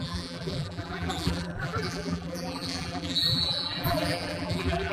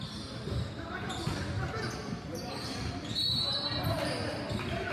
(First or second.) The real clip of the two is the second